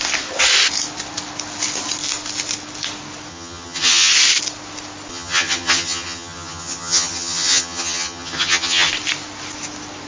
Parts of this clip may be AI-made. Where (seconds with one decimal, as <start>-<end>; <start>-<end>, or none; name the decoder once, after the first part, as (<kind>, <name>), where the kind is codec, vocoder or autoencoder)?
3.3-4.1 (vocoder, HiFi-GAN); 5.1-8.9